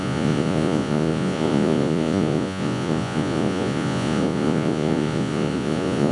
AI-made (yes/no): yes